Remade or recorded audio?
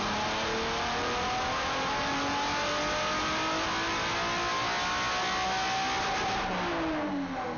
recorded